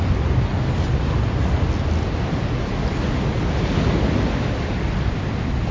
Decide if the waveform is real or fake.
real